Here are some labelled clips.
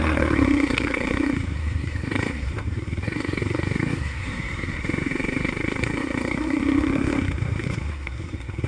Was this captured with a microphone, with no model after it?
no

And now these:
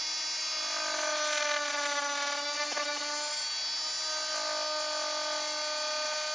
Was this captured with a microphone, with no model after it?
yes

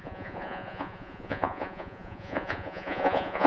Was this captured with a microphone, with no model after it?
no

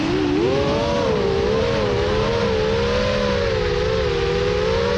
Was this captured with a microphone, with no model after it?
yes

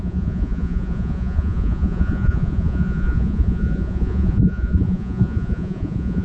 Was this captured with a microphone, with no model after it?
no